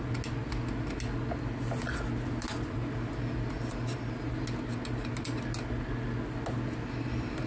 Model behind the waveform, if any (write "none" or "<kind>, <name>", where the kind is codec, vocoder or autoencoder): none